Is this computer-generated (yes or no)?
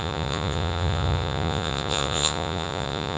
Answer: yes